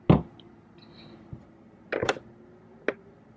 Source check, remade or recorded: recorded